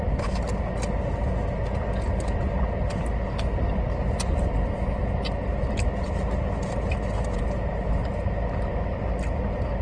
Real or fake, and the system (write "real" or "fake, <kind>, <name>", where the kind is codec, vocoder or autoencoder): real